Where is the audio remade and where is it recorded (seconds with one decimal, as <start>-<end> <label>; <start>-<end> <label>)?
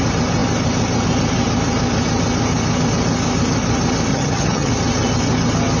0.0-4.1 recorded; 4.1-4.7 remade; 4.7-5.8 recorded